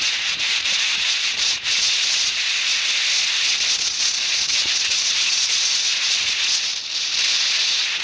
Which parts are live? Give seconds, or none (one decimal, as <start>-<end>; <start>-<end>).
2.7-3.7; 6.7-7.3